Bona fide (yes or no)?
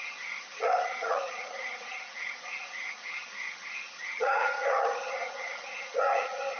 no